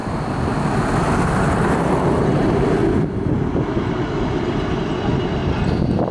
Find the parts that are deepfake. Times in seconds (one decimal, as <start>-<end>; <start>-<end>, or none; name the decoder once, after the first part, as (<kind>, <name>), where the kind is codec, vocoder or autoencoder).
1.4-2.8 (vocoder, BigVGAN v2); 4.0-5.4

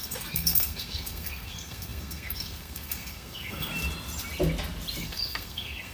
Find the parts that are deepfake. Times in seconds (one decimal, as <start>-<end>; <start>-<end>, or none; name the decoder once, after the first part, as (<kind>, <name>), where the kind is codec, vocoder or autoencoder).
0.0-3.7 (codec, SNAC); 5.0-5.9

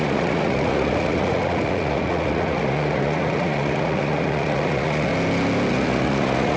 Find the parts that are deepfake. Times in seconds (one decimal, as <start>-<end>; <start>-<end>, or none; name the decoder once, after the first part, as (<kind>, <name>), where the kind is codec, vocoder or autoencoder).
0.0-5.1 (vocoder, Vocos); 5.7-6.6

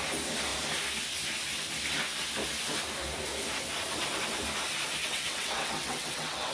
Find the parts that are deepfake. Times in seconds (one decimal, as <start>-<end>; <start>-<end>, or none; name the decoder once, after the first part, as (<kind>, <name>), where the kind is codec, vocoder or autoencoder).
5.0-6.5 (vocoder, WaveNeXt)

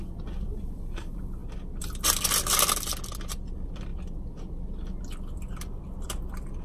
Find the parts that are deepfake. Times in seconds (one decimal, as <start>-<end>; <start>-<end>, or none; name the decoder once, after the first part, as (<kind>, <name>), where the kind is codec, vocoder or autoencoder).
0.0-6.6 (vocoder, BigVGAN v2)